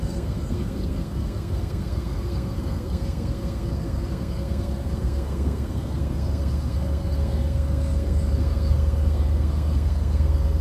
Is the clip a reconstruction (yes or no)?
yes